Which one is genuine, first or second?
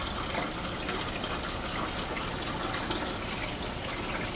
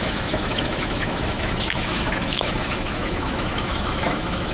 first